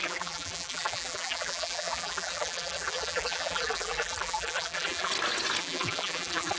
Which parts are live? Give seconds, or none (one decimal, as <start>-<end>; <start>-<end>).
5.1-5.6